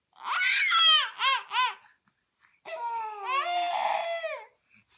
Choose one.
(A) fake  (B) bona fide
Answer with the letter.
B